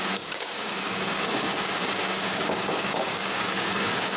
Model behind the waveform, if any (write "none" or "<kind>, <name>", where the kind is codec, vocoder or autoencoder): codec, DAC